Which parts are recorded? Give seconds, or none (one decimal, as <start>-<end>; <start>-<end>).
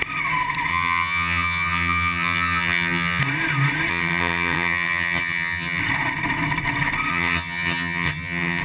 0.0-0.7; 3.2-3.9; 5.8-7.1